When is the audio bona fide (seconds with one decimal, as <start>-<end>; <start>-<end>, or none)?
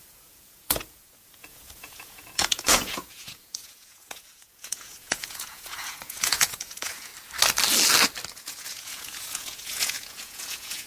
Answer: 7.1-8.3